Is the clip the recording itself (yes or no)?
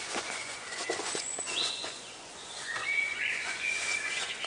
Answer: no